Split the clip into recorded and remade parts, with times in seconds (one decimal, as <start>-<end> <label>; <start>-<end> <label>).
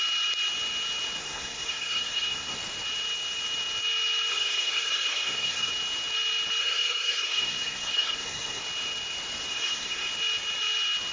0.0-1.2 recorded; 1.2-2.6 remade; 2.6-4.3 recorded; 4.3-5.7 remade; 5.7-6.6 recorded; 6.6-8.6 remade; 8.6-9.5 recorded; 9.5-10.1 remade; 10.1-11.1 recorded